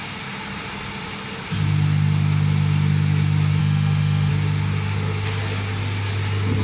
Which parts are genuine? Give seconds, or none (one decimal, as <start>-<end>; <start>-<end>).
0.0-3.6; 4.3-6.6